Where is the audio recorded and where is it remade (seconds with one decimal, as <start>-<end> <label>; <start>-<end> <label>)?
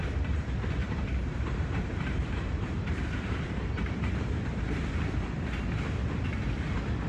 0.0-0.8 recorded; 0.8-5.1 remade; 5.1-7.1 recorded